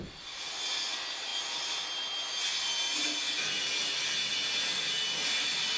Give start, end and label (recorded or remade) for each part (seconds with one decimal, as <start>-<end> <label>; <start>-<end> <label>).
0.0-5.8 recorded